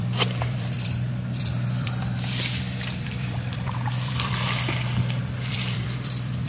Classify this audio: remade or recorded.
remade